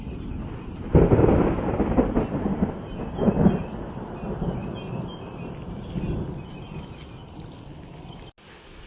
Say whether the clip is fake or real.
real